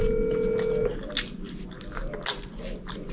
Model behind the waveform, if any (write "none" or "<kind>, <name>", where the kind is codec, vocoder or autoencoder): none